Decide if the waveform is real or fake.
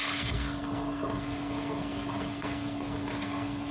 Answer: fake